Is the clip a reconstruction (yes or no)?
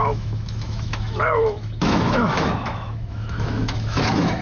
yes